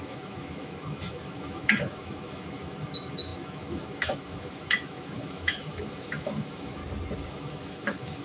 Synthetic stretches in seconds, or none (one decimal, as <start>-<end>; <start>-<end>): 0.0-6.8; 7.3-8.2